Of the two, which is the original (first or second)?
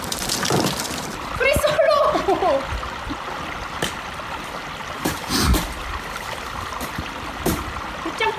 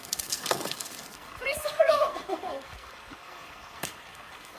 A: first